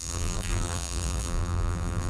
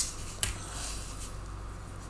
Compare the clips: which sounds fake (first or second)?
first